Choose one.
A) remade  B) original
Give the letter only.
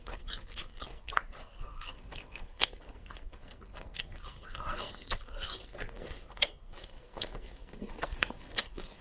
A